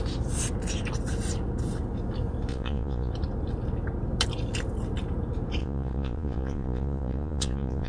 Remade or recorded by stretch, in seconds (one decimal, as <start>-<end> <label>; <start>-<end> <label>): 0.0-2.5 recorded; 2.5-3.1 remade; 3.1-5.6 recorded; 5.6-7.9 remade